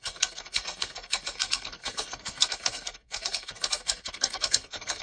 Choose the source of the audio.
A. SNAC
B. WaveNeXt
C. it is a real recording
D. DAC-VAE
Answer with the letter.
A